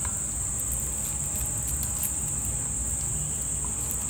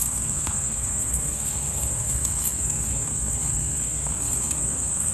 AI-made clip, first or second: second